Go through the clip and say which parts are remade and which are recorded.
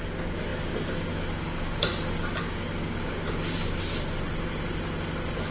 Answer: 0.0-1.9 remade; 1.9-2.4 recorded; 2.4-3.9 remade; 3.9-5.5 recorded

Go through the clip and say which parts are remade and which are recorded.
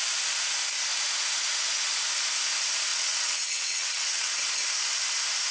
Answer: 0.0-2.9 recorded; 2.9-4.3 remade; 4.3-5.5 recorded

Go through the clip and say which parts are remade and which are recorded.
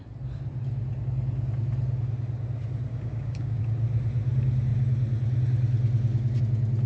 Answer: 0.0-2.9 recorded; 2.9-3.6 remade; 3.6-6.9 recorded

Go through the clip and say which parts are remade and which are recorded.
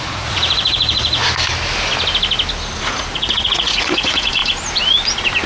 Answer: 0.0-1.2 remade; 1.2-2.9 recorded; 2.9-4.4 remade; 4.4-5.5 recorded